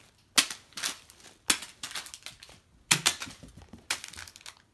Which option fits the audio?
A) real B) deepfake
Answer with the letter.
A